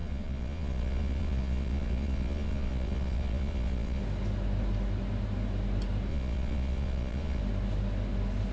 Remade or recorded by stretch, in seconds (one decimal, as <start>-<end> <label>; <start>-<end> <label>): 0.0-4.0 remade; 4.0-6.1 recorded; 6.1-7.4 remade; 7.4-8.5 recorded